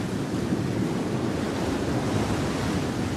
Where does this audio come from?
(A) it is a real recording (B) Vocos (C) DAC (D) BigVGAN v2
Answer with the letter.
A